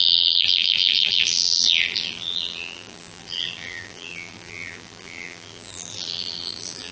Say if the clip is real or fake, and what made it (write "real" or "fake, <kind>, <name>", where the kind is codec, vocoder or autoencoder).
fake, vocoder, BigVGAN v2